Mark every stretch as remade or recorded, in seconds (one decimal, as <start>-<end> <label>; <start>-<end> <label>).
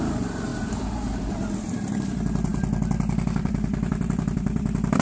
0.0-0.5 remade; 0.5-1.3 recorded; 1.3-5.0 remade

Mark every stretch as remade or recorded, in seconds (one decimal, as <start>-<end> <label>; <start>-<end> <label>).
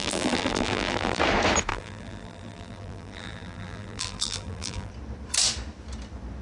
0.0-1.2 remade; 1.2-1.7 recorded; 1.7-4.9 remade; 4.9-6.4 recorded